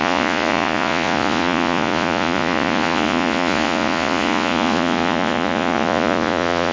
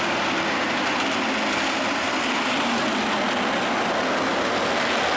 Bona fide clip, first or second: second